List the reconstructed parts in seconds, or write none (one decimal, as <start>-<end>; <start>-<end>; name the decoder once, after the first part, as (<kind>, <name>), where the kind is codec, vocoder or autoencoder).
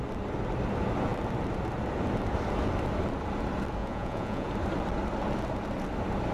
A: 3.8-4.5 (vocoder, Vocos)